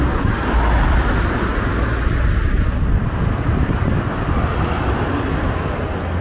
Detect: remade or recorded recorded